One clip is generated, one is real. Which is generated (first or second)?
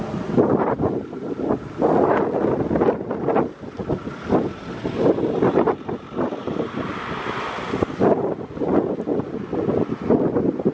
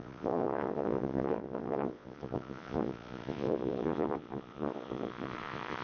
second